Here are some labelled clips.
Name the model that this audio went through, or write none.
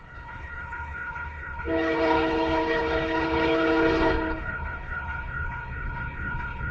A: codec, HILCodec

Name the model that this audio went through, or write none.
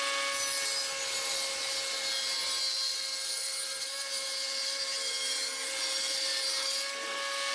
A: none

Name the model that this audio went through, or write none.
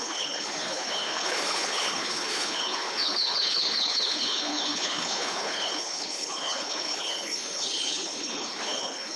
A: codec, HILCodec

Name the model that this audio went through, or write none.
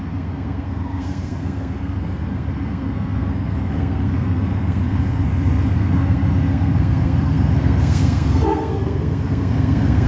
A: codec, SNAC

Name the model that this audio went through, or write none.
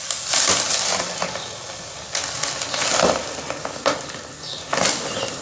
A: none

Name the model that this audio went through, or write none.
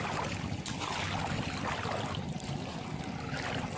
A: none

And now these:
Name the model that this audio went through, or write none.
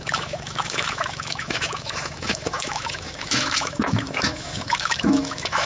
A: autoencoder, DAC-VAE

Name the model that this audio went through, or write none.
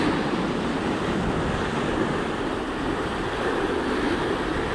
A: none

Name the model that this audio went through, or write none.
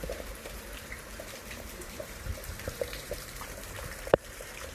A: vocoder, BigVGAN v2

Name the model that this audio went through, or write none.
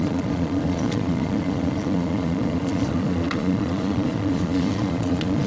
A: vocoder, Vocos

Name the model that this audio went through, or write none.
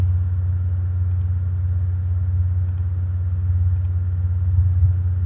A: none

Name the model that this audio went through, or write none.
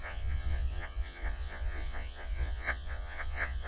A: vocoder, Vocos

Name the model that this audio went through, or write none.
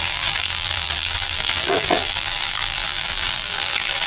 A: vocoder, BigVGAN v2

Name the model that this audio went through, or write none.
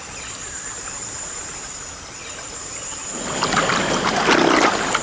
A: none